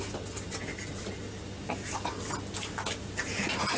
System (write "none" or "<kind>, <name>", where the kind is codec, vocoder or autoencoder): none